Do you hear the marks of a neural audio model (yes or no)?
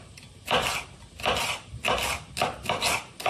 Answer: no